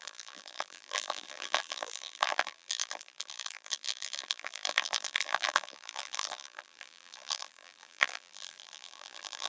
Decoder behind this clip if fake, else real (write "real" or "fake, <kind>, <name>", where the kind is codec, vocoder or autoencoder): fake, vocoder, BigVGAN v2